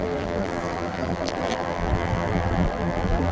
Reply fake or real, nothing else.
fake